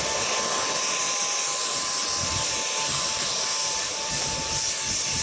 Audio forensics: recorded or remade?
recorded